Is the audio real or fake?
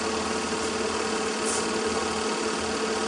real